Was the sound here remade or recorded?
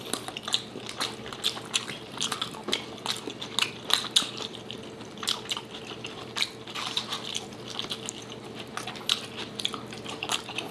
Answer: recorded